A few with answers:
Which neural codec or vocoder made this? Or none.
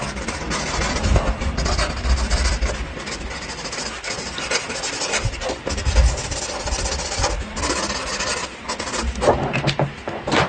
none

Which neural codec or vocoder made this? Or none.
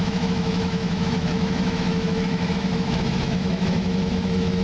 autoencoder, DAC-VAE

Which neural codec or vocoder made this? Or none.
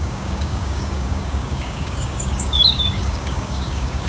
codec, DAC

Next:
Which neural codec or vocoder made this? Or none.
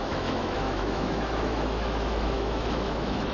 autoencoder, DAC-VAE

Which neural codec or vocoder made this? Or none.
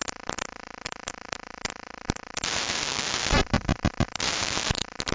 vocoder, BigVGAN v2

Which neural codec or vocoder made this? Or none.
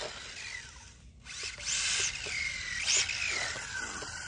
none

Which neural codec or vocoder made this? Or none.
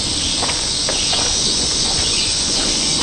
vocoder, Vocos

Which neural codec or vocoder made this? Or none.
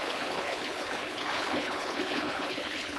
codec, HILCodec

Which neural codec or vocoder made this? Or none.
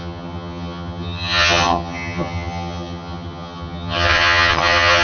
vocoder, HiFi-GAN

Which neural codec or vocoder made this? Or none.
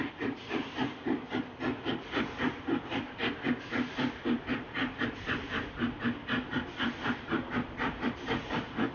none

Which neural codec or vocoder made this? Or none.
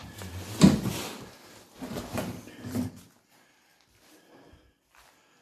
none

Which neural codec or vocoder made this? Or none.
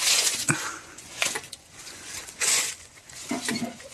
vocoder, Vocos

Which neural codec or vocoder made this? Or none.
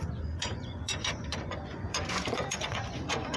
vocoder, Vocos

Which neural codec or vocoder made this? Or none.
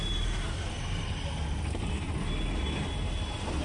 none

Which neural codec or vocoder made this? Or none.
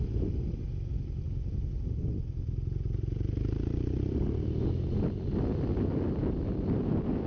none